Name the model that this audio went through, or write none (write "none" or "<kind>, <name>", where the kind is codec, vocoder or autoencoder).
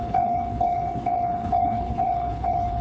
codec, HILCodec